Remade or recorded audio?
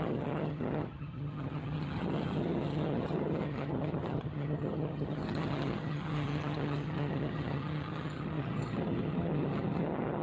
remade